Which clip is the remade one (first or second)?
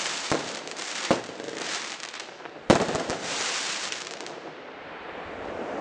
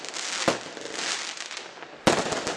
first